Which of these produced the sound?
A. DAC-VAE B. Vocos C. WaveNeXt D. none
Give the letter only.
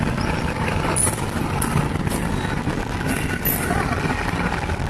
D